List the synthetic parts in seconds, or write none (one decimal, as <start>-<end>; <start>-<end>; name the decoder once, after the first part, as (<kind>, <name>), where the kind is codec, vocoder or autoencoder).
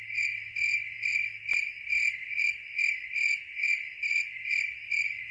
none